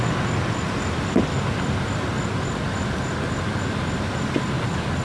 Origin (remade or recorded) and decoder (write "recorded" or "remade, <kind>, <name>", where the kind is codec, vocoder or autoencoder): recorded